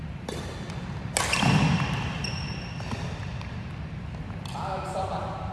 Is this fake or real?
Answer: real